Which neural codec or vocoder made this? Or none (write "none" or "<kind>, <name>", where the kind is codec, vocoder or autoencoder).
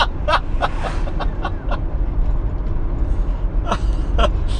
none